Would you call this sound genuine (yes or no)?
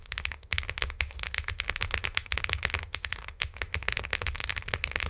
no